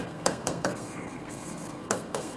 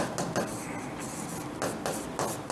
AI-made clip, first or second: first